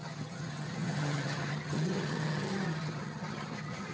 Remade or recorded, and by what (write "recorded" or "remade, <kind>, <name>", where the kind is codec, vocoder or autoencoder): remade, vocoder, HiFi-GAN